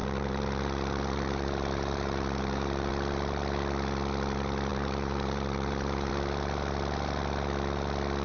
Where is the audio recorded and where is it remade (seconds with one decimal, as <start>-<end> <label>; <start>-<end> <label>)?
0.0-2.9 remade; 2.9-4.7 recorded; 4.7-6.1 remade; 6.1-8.2 recorded